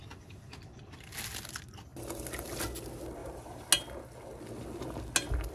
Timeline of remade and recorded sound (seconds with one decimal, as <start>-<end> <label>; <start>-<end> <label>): 0.0-3.2 recorded; 3.2-3.7 remade; 3.7-5.5 recorded